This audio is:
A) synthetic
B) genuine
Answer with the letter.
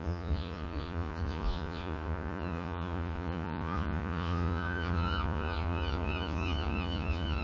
A